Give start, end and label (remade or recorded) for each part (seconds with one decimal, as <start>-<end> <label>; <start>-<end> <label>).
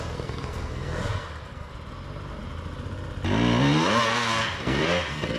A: 0.0-1.7 remade; 1.7-4.0 recorded; 4.0-5.4 remade